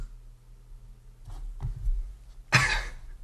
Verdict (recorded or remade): recorded